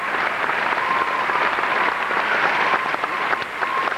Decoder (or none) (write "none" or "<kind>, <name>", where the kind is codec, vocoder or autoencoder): vocoder, BigVGAN v2